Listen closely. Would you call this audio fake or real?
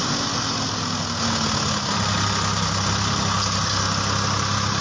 real